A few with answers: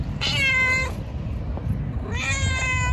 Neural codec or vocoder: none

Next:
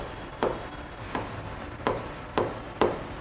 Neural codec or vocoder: none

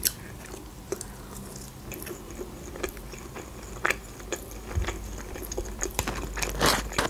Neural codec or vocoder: none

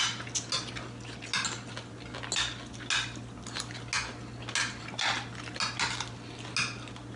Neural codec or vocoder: none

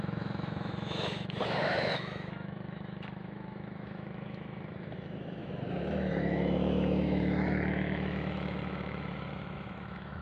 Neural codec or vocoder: autoencoder, DAC-VAE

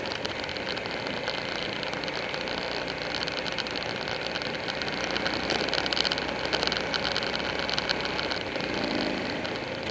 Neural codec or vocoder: none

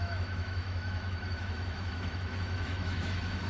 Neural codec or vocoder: autoencoder, DAC-VAE